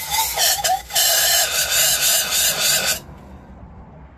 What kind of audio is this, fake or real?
real